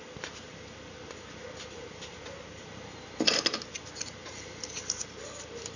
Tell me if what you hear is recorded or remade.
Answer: recorded